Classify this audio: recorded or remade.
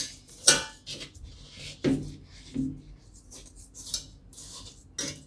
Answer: recorded